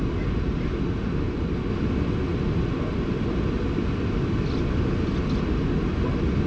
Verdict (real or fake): real